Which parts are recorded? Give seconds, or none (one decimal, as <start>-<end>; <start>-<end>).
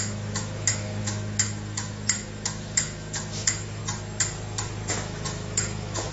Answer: 3.8-4.9